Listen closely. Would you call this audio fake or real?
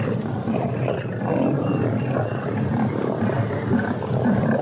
fake